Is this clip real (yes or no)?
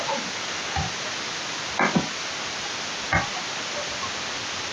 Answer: yes